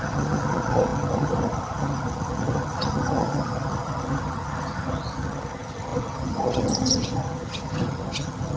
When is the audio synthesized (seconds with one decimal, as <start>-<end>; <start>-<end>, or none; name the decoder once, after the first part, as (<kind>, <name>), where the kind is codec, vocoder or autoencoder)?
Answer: 0.0-8.6 (vocoder, HiFi-GAN)

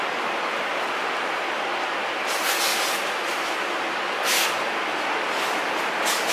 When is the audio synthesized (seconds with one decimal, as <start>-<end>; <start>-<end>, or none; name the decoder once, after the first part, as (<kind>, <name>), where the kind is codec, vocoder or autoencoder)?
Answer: 2.7-4.0 (vocoder, BigVGAN v2)

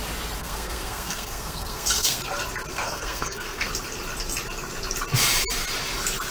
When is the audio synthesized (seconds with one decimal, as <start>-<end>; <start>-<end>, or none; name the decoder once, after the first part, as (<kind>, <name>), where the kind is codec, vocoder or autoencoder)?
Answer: 0.4-2.2 (codec, SNAC); 2.7-3.7

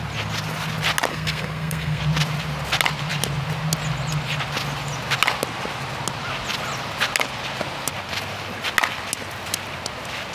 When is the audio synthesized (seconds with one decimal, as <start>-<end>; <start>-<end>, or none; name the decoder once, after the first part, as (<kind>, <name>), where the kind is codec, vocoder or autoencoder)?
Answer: 1.1-2.0 (codec, SNAC)

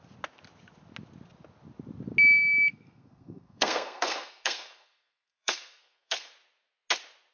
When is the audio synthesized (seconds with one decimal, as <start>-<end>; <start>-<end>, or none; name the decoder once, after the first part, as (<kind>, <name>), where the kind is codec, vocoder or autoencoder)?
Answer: 2.7-6.3 (codec, SNAC)

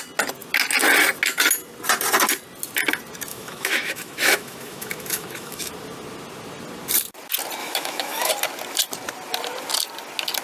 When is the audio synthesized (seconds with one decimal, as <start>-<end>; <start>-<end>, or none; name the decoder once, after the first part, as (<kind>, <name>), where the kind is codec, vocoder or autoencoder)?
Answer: 3.3-5.7 (autoencoder, DAC-VAE); 7.6-8.3